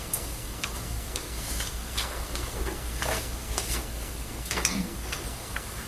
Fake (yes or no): yes